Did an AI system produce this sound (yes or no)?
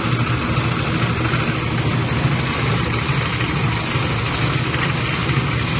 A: no